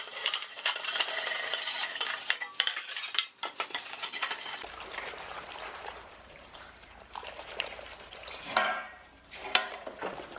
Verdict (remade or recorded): remade